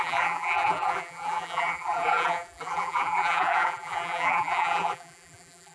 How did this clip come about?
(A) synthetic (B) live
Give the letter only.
A